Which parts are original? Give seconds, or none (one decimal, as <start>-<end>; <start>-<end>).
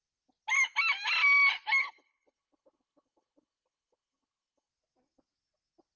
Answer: 0.0-1.8; 4.7-6.0